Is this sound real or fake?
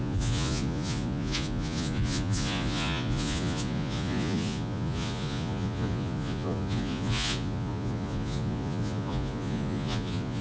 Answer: fake